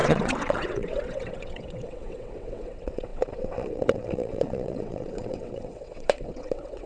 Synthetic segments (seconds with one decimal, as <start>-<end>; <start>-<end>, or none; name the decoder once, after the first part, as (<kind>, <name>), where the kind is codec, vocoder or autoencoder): 0.0-6.9 (vocoder, WaveNeXt)